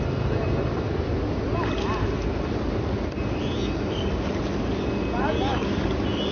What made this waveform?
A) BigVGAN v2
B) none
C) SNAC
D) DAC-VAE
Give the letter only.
B